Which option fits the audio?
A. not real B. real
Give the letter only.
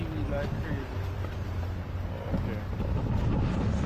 B